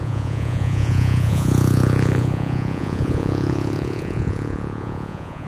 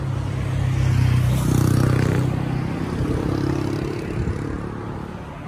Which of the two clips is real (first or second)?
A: second